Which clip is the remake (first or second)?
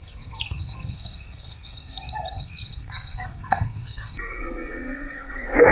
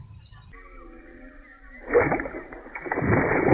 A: first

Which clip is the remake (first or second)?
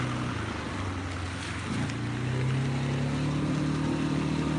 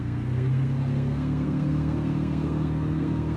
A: second